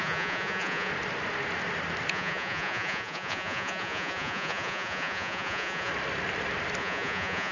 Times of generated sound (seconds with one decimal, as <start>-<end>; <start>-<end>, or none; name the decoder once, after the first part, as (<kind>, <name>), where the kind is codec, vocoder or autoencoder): 0.0-0.9 (vocoder, Vocos); 2.1-5.9; 6.8-7.5